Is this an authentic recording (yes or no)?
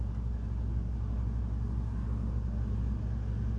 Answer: yes